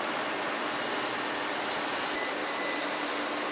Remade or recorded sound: recorded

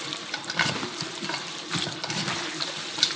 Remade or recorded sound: remade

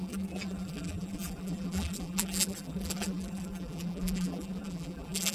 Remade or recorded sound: remade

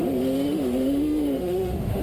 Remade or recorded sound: remade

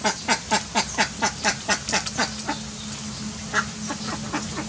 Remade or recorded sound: recorded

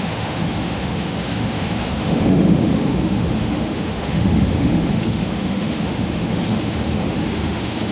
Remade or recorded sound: remade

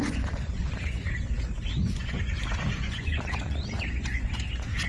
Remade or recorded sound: remade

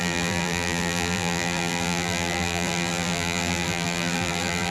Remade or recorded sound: remade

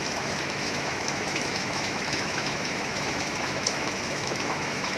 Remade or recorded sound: remade